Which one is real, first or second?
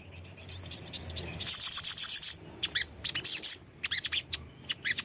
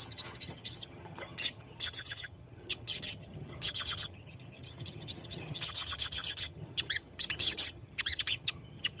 first